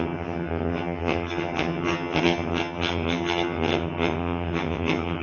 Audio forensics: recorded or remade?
remade